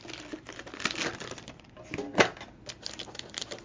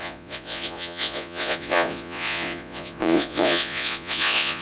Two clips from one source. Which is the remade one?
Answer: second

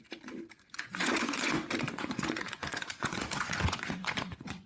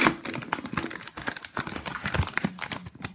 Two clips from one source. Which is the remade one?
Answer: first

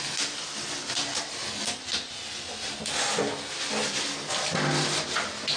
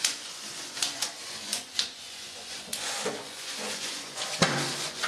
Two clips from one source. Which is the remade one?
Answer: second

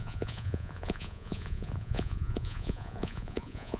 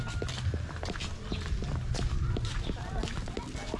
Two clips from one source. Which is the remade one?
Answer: first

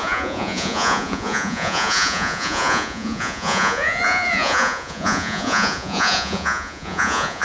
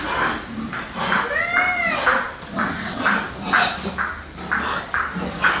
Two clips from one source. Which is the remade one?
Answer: first